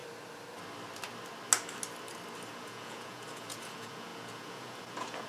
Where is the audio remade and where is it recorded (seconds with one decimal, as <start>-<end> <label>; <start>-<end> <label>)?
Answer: 0.0-2.5 recorded; 2.5-5.3 remade